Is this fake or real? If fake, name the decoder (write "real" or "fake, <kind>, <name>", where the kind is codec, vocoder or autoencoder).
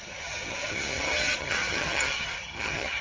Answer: fake, vocoder, HiFi-GAN